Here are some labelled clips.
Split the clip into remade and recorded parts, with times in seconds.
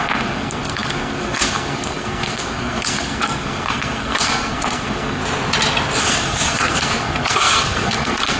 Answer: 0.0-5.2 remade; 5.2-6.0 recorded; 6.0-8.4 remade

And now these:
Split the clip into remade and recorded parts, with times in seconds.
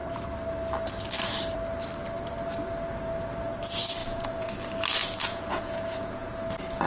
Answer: 0.0-4.0 recorded; 4.0-4.5 remade; 4.5-5.0 recorded; 5.0-6.3 remade; 6.3-6.9 recorded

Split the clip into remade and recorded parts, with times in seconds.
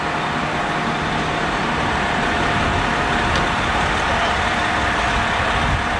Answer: 0.0-6.0 recorded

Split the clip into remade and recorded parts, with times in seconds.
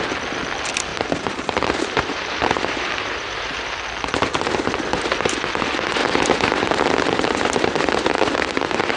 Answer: 0.0-0.9 recorded; 0.9-3.8 remade; 3.8-9.0 recorded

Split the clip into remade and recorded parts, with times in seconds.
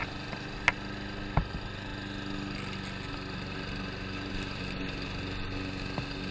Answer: 0.0-6.3 recorded